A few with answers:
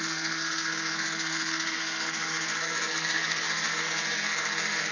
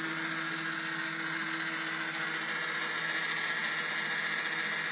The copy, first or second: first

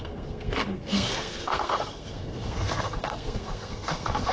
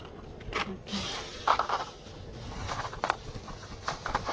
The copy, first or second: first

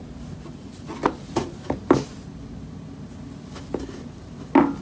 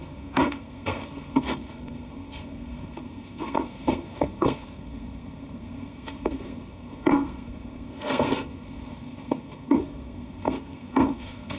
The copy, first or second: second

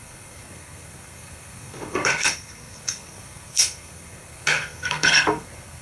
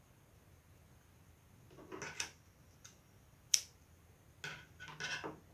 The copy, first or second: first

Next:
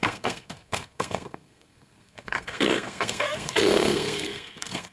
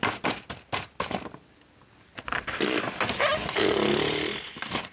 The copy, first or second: first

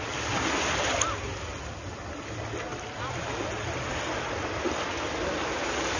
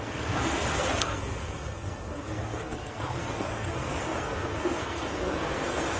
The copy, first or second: second